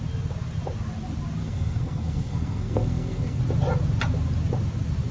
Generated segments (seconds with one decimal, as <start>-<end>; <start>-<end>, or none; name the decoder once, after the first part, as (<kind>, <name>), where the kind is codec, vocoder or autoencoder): 1.4-3.4 (codec, SNAC)